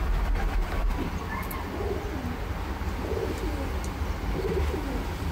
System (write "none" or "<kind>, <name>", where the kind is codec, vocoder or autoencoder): none